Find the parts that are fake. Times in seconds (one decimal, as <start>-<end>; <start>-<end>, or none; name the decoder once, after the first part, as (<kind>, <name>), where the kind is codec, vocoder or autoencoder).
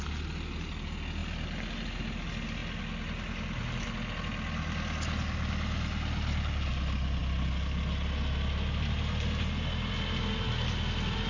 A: none